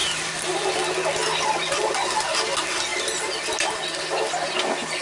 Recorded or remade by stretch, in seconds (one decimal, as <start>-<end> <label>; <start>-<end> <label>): 0.0-0.6 remade; 0.6-2.9 recorded; 2.9-3.4 remade; 3.4-5.0 recorded